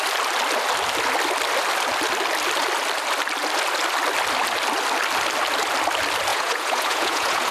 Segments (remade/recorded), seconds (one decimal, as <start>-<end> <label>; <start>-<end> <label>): 0.0-6.3 recorded; 6.3-7.5 remade